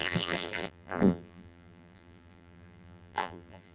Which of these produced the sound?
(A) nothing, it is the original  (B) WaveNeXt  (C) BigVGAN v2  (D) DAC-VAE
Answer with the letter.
C